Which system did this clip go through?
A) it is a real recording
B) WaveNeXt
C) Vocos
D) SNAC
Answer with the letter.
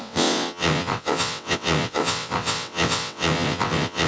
B